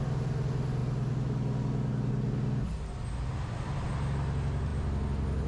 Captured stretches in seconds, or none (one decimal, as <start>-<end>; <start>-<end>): 0.0-5.5